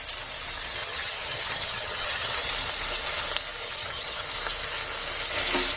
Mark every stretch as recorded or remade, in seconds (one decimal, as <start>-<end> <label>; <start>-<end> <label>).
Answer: 0.0-0.8 recorded; 0.8-2.5 remade; 2.5-3.6 recorded; 3.6-4.2 remade; 4.2-5.8 recorded